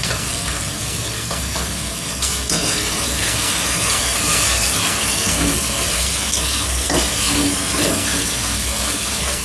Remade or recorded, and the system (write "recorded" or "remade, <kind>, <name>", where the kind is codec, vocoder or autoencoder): remade, codec, SNAC